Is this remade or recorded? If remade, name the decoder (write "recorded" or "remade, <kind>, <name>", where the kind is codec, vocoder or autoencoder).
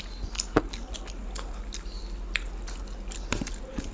recorded